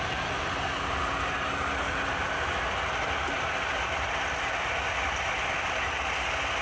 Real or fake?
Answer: real